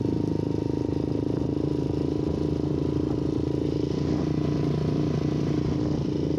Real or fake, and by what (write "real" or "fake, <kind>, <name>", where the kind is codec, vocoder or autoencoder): real